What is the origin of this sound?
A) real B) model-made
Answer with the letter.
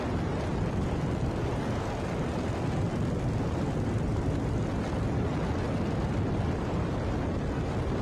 A